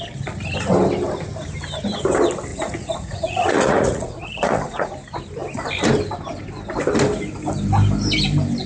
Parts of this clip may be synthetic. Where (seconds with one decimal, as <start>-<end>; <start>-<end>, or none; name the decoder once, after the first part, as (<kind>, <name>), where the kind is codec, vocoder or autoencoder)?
2.5-4.9 (vocoder, Vocos)